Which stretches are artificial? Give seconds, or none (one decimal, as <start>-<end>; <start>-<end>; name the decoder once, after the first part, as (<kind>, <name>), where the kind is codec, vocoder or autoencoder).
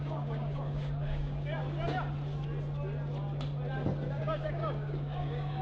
0.0-1.6 (codec, DAC); 4.2-5.6